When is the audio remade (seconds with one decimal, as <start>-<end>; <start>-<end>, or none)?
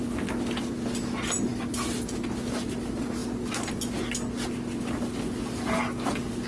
none